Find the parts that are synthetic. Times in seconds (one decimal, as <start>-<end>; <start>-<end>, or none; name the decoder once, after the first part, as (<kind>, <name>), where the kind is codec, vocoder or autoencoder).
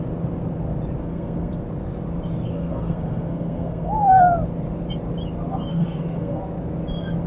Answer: 1.0-1.6 (codec, SNAC); 2.5-4.2; 5.7-6.4